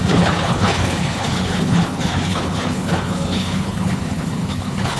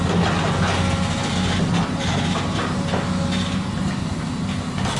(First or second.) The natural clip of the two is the second